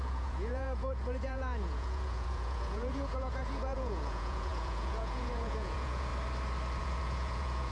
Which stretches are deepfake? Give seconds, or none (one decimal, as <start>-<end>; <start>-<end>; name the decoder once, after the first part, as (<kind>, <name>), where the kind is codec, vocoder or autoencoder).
0.0-6.1 (vocoder, Vocos); 6.8-7.7